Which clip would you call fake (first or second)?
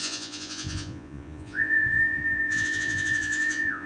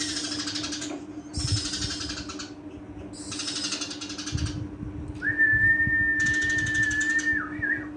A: first